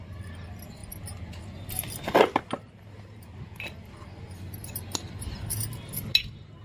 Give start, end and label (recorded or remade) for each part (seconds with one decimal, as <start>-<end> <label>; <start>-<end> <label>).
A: 0.0-6.6 recorded